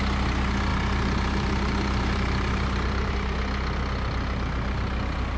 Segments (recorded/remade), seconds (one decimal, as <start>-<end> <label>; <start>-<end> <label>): 0.0-0.7 recorded; 0.7-3.1 remade; 3.1-5.4 recorded